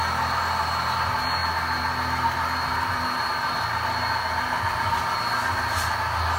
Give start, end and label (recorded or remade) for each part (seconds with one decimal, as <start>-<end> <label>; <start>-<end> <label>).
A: 0.0-6.4 recorded